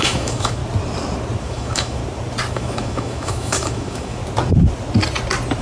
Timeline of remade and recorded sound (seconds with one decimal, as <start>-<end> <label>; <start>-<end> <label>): 0.0-0.6 remade; 0.6-1.4 recorded; 1.4-2.0 remade; 2.0-2.5 recorded; 2.5-4.2 remade; 4.2-5.6 recorded